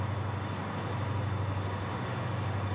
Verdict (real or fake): real